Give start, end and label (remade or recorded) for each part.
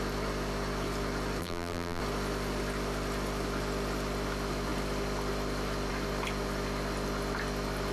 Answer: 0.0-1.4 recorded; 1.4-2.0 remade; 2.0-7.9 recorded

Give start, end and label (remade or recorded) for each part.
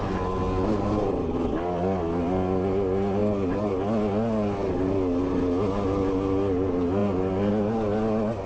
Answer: 0.0-8.5 recorded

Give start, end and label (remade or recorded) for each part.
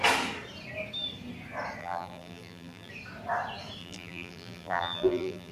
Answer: 0.0-1.8 recorded; 1.8-2.9 remade; 2.9-3.8 recorded; 3.8-5.5 remade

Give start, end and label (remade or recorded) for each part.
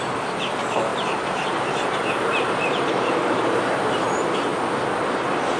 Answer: 0.0-4.5 remade; 4.5-5.0 recorded; 5.0-5.6 remade